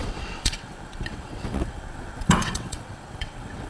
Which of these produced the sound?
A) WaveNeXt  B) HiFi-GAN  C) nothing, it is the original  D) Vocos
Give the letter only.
A